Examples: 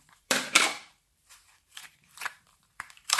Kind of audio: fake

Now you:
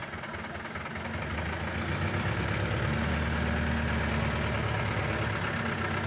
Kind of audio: real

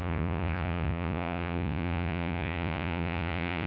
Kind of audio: fake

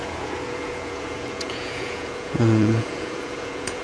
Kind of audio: fake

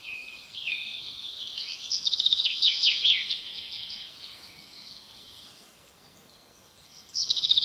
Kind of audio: fake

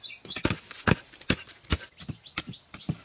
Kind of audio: real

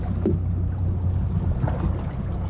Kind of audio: real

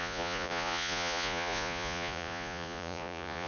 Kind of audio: fake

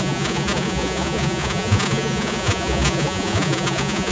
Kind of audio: fake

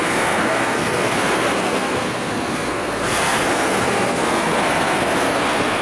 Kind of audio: fake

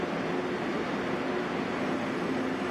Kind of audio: real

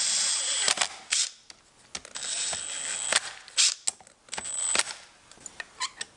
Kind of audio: real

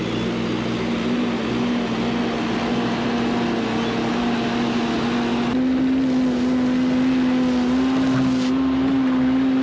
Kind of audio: real